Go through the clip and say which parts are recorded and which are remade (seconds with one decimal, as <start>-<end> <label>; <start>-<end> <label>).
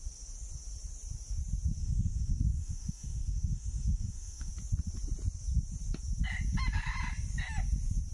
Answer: 0.0-1.8 recorded; 1.8-4.5 remade; 4.5-8.1 recorded